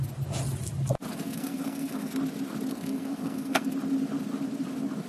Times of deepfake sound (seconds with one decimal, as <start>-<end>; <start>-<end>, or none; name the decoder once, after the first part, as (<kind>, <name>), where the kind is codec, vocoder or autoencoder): 1.1-2.1 (codec, SNAC); 2.7-3.7